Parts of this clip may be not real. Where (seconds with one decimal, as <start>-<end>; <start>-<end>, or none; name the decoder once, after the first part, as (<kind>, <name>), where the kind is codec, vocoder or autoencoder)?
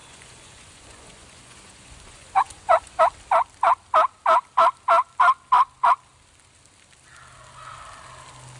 0.0-3.0 (vocoder, Vocos)